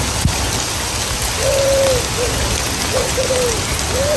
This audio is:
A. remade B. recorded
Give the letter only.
B